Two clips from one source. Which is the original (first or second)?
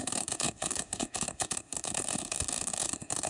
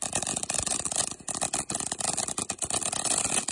second